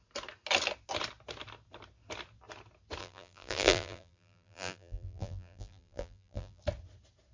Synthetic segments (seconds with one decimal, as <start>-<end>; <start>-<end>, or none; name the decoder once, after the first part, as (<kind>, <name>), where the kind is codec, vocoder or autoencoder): 3.0-6.6 (vocoder, BigVGAN v2)